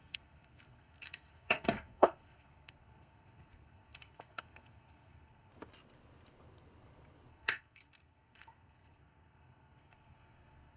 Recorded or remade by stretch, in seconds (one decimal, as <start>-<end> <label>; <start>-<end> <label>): 0.0-5.5 remade; 5.5-7.3 recorded; 7.3-10.8 remade